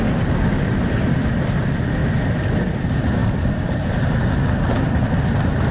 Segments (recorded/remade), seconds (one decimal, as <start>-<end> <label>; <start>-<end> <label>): 0.0-5.7 recorded